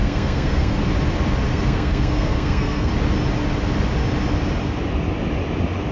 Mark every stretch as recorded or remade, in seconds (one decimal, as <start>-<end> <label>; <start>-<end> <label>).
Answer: 0.0-0.8 remade; 0.8-1.5 recorded; 1.5-2.9 remade; 2.9-5.9 recorded